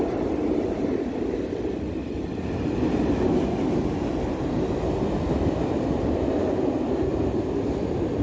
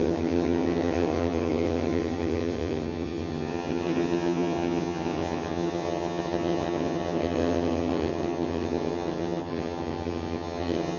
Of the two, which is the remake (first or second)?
second